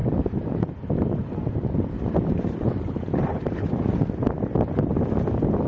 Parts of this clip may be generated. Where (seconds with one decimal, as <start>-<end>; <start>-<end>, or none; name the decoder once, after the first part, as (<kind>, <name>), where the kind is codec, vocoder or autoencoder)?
none